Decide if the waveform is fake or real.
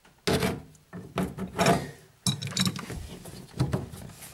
real